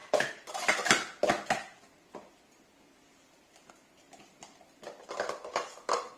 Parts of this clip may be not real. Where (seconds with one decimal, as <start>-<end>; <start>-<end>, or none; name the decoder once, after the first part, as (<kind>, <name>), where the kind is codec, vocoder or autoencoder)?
0.0-3.7 (vocoder, BigVGAN v2); 5.5-6.2